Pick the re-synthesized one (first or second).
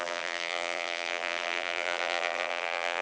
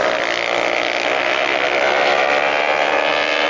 first